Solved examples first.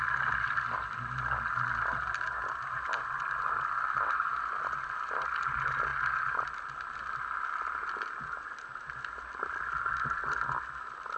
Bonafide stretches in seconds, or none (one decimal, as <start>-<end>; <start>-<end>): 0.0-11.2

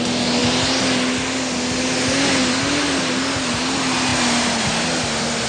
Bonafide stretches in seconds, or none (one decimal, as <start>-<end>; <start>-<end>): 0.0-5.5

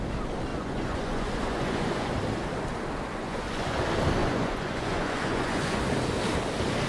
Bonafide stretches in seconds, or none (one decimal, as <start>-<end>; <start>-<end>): 0.0-0.5; 2.1-3.2; 3.8-4.2; 5.8-6.9

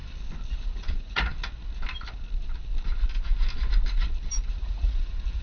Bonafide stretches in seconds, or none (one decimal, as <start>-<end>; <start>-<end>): 0.0-0.7; 1.3-4.5

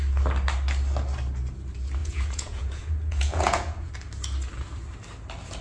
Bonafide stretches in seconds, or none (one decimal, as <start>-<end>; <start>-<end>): 0.0-2.0; 3.9-5.6

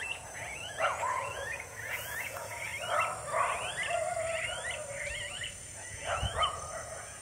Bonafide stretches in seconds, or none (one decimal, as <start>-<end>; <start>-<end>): 2.7-5.3

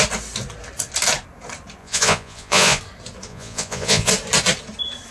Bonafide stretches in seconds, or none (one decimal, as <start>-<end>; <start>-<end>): 0.0-1.8; 2.8-3.3; 4.1-5.1

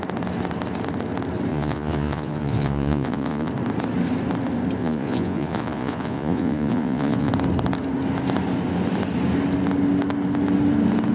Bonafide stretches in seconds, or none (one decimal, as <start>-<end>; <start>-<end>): 0.0-1.5; 3.5-4.8; 7.3-11.1